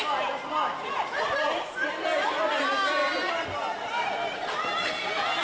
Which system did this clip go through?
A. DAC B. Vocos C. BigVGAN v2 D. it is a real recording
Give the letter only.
D